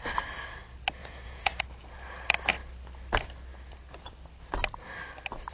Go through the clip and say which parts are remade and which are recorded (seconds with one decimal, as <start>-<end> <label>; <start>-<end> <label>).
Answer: 0.0-1.0 recorded; 1.0-1.6 remade; 1.6-5.5 recorded